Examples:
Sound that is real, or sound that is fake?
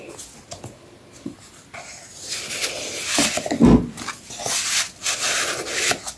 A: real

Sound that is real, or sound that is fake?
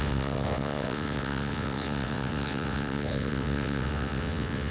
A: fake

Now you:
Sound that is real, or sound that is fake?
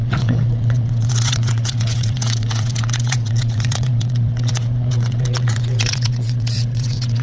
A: fake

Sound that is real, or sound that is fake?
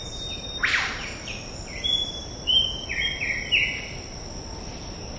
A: real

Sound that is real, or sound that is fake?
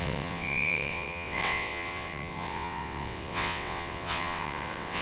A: fake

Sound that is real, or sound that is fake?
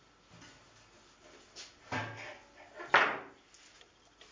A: real